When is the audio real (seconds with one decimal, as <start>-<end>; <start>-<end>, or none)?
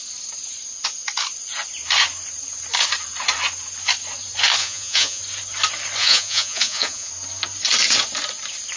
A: 0.0-4.6; 5.2-6.0; 7.1-8.8